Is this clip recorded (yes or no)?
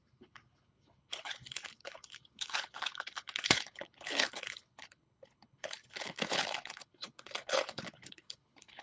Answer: no